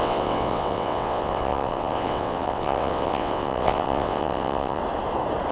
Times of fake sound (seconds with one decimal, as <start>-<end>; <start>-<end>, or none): 0.0-4.8